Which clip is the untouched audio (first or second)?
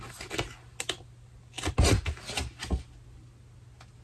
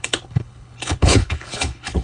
first